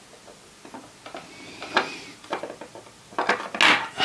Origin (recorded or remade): recorded